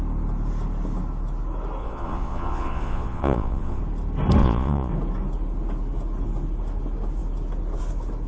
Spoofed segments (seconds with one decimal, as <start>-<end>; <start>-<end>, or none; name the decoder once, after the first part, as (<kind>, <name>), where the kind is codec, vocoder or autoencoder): 1.8-3.8 (vocoder, Vocos); 4.4-4.9